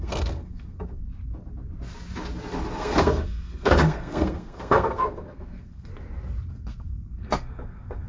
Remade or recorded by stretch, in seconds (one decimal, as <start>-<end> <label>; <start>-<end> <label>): 0.0-1.0 remade; 1.0-2.7 recorded; 2.7-5.9 remade; 5.9-6.5 recorded; 6.5-8.1 remade